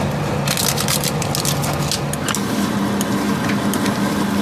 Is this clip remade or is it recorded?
recorded